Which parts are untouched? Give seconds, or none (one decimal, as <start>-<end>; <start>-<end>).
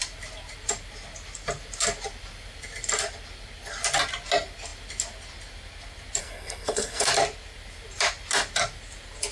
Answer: 0.0-6.2; 7.1-9.3